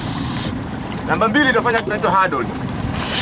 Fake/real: fake